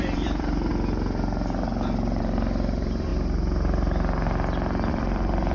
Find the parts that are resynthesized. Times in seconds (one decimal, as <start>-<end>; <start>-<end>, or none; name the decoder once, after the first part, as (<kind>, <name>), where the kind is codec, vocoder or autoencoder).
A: 0.0-0.7 (vocoder, BigVGAN v2); 2.2-3.1; 4.9-5.5